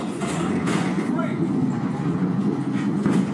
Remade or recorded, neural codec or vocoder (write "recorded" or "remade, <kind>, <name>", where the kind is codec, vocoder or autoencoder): remade, vocoder, Vocos